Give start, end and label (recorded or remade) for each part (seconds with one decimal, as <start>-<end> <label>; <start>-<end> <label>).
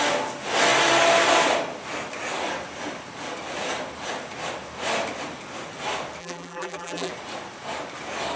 0.0-6.2 recorded; 6.2-7.1 remade; 7.1-8.4 recorded